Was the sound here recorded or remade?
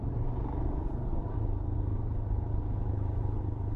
remade